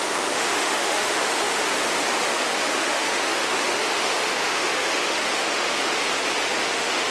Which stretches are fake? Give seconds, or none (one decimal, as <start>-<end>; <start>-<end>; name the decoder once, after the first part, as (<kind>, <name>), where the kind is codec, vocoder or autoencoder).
0.0-1.7 (autoencoder, DAC-VAE); 2.3-6.0; 6.6-7.1